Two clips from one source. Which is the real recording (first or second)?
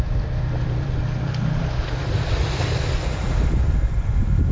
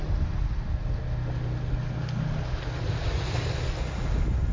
second